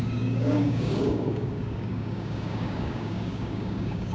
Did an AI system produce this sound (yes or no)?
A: yes